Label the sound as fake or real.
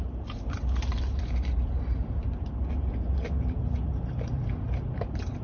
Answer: fake